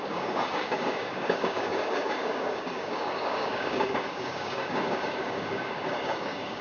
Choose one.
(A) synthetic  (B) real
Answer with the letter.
A